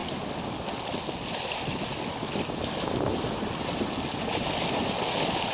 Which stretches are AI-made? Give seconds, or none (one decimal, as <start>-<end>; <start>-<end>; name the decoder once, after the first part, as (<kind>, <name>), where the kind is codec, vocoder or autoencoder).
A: none